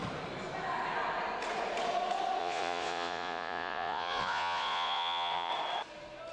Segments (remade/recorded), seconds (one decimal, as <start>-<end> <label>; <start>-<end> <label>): 0.0-2.4 recorded; 2.4-5.5 remade; 5.5-6.3 recorded